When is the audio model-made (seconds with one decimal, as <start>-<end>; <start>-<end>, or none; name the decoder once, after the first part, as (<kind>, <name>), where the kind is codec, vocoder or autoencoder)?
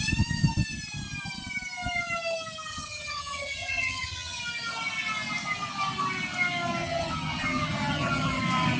2.7-4.4 (vocoder, HiFi-GAN); 6.8-8.4